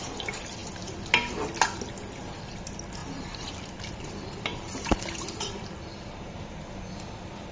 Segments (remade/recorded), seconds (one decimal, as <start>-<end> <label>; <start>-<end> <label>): 0.0-3.0 recorded; 3.0-6.6 remade; 6.6-7.5 recorded